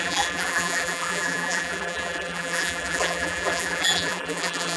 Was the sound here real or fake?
fake